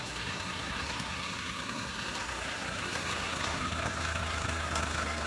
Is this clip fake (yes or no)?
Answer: yes